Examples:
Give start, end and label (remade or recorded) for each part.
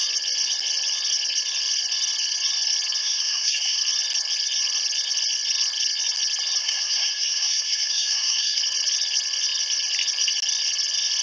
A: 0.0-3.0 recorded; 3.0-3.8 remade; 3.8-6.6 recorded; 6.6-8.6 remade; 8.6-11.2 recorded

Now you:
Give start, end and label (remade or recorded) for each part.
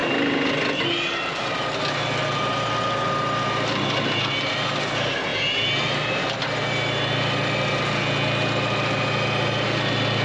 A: 0.0-10.2 recorded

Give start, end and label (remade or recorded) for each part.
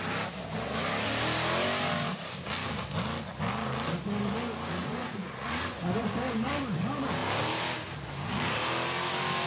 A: 0.0-4.8 recorded; 4.8-6.1 remade; 6.1-9.5 recorded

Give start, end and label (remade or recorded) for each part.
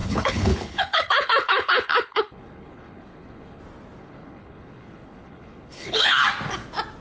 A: 0.0-3.6 remade; 3.6-4.0 recorded; 4.0-6.2 remade; 6.2-7.0 recorded